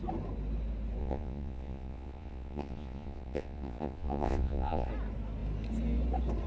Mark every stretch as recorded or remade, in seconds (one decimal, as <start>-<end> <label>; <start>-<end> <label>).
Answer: 0.0-1.0 recorded; 1.0-4.9 remade; 4.9-6.5 recorded